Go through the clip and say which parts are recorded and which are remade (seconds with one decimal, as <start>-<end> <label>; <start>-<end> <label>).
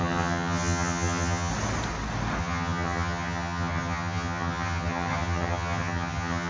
0.0-1.5 remade; 1.5-2.4 recorded; 2.4-6.5 remade